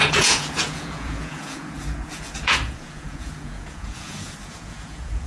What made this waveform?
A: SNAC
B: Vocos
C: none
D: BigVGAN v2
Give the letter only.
B